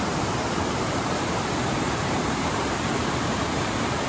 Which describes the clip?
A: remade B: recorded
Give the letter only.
A